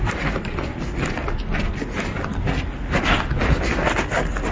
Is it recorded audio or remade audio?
recorded